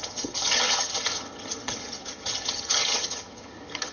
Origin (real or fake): fake